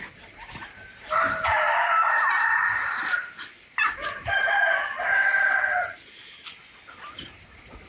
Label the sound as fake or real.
real